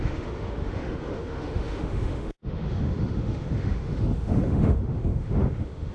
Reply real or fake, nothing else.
fake